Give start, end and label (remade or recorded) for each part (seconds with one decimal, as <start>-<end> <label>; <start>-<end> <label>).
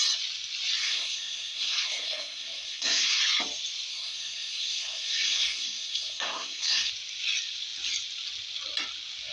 0.0-0.8 recorded; 0.8-3.2 remade; 3.2-3.9 recorded; 3.9-6.9 remade; 6.9-9.3 recorded